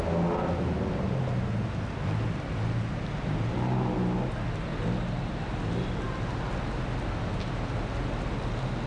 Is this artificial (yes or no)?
no